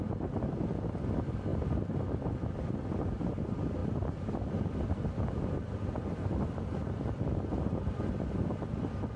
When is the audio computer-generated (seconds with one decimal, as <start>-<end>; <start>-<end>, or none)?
1.5-2.3; 3.8-8.0